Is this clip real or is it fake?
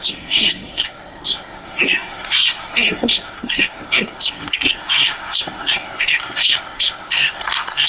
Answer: fake